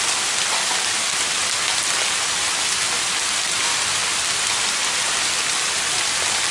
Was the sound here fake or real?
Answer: real